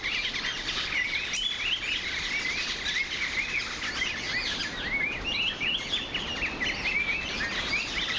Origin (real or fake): real